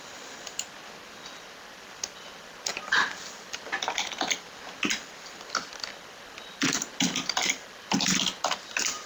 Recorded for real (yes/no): yes